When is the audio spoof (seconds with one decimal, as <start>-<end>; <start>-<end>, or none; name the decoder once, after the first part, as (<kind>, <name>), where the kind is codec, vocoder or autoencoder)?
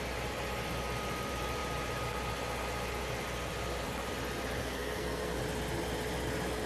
4.6-5.4 (codec, SNAC)